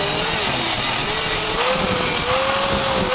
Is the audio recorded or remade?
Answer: recorded